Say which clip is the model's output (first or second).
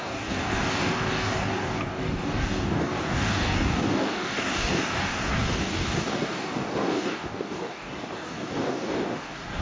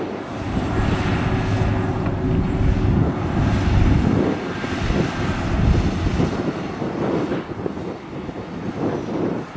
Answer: first